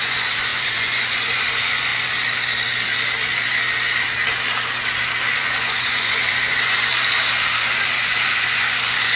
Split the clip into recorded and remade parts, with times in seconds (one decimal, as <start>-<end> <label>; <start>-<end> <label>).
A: 0.0-1.9 remade; 1.9-5.3 recorded; 5.3-6.9 remade; 6.9-7.5 recorded; 7.5-9.2 remade